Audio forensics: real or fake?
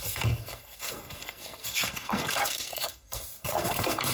fake